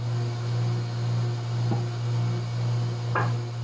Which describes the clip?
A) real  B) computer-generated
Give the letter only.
A